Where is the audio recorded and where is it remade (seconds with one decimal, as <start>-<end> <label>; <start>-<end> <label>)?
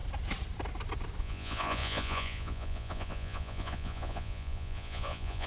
0.0-1.2 recorded; 1.2-5.5 remade